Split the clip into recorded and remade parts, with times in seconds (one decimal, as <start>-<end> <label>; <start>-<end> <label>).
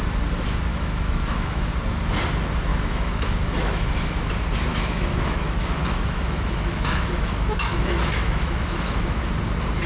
0.0-0.7 recorded; 0.7-1.7 remade; 1.7-2.7 recorded; 2.7-4.3 remade; 4.3-4.7 recorded; 4.7-9.2 remade; 9.2-9.9 recorded